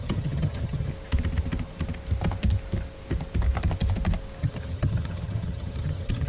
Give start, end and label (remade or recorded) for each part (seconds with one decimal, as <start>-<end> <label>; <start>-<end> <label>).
0.0-0.9 remade; 0.9-4.4 recorded; 4.4-6.3 remade